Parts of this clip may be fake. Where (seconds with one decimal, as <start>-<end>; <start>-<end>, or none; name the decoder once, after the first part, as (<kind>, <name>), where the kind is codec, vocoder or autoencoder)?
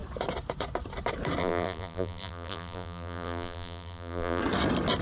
1.4-4.4 (vocoder, BigVGAN v2)